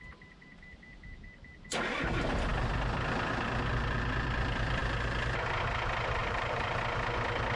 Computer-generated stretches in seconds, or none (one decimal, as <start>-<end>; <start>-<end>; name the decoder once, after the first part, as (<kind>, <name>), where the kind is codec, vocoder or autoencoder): 6.2-6.8 (vocoder, BigVGAN v2)